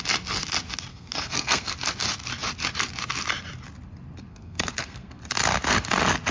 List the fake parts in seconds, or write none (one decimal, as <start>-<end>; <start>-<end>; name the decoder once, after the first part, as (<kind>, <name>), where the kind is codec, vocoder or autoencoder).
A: 0.9-1.7 (codec, SNAC); 4.3-5.2